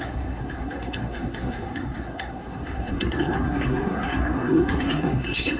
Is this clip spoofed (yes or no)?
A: yes